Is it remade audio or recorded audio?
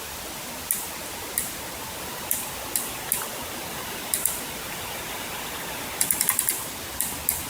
recorded